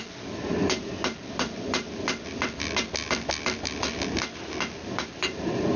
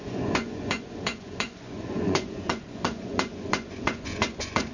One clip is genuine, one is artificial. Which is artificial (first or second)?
second